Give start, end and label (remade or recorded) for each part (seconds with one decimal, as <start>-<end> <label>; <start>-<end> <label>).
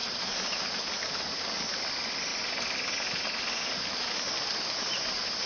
0.0-5.5 recorded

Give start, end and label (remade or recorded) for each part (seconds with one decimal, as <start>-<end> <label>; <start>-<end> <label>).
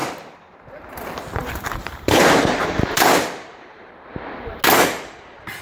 0.0-0.6 remade; 0.6-1.4 recorded; 1.4-4.6 remade; 4.6-5.6 recorded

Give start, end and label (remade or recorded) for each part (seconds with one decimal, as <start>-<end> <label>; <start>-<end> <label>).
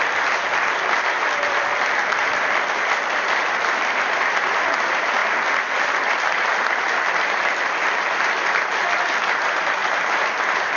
0.0-2.2 recorded; 2.2-4.6 remade; 4.6-9.8 recorded; 9.8-10.4 remade; 10.4-10.8 recorded